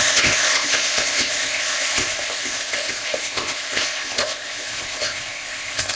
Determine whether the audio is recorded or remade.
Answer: remade